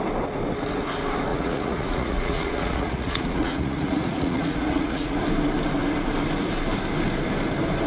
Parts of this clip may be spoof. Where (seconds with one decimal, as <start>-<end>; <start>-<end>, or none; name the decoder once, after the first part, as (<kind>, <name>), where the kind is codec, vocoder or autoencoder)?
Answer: 1.3-5.2 (vocoder, Vocos)